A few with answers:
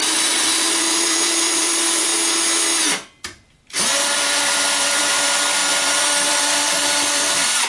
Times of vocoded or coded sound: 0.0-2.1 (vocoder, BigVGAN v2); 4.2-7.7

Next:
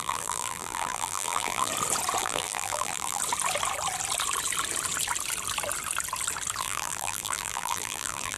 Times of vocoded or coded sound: 0.0-1.7 (vocoder, BigVGAN v2); 2.2-3.2; 6.6-8.4

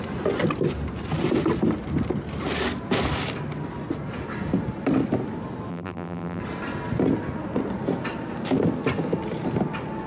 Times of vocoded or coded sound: 5.7-6.4 (vocoder, BigVGAN v2)